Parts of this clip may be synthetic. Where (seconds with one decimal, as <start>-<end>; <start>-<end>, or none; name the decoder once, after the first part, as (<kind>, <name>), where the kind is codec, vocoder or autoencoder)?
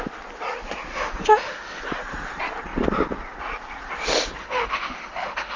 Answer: 0.9-1.8 (autoencoder, DAC-VAE); 4.4-5.6